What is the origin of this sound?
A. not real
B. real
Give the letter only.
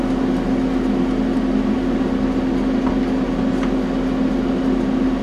B